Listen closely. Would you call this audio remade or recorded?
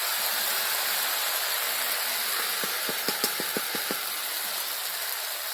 recorded